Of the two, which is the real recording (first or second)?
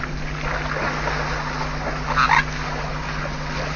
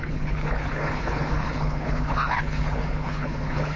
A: first